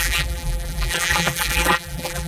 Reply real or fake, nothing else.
fake